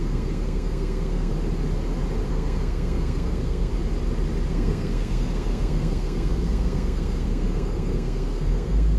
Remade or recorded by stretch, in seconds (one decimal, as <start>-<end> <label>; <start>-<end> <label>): 0.0-1.3 remade; 1.3-2.3 recorded; 2.3-3.7 remade; 3.7-4.5 recorded; 4.5-9.0 remade